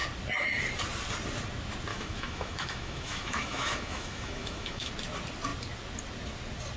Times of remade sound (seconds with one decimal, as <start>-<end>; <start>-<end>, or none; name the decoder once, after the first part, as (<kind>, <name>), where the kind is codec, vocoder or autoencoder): 1.9-4.9 (autoencoder, DAC-VAE)